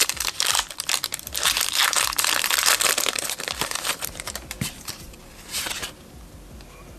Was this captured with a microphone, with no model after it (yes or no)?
no